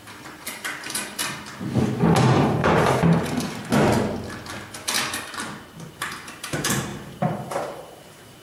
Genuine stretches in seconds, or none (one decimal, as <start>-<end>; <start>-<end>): 1.2-2.2; 2.6-5.9